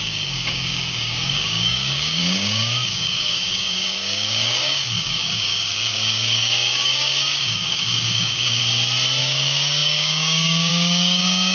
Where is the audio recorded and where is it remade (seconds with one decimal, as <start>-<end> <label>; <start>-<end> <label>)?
0.0-8.6 remade; 8.6-9.2 recorded; 9.2-11.5 remade